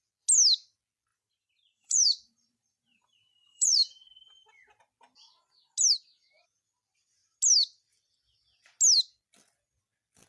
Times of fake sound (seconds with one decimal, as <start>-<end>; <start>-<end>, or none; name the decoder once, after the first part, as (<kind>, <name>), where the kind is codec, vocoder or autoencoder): 1.1-4.8 (vocoder, BigVGAN v2)